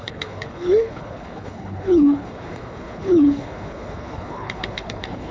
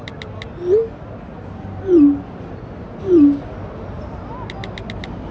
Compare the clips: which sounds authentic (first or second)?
second